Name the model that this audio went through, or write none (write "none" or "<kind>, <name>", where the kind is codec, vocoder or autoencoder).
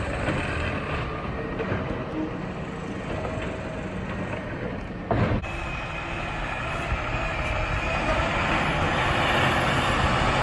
none